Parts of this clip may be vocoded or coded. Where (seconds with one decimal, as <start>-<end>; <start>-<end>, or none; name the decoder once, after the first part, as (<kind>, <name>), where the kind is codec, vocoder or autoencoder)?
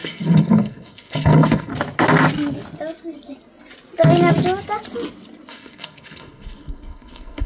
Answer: 0.0-1.7 (codec, SNAC); 5.5-7.5